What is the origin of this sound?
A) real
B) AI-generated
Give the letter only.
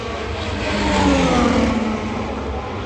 A